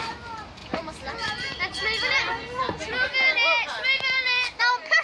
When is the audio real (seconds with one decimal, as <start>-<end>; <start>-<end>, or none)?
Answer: 0.0-0.6; 1.1-5.0